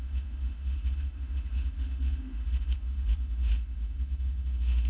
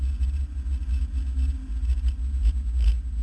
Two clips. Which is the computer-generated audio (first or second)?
first